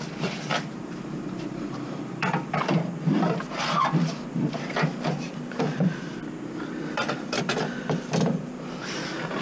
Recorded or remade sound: remade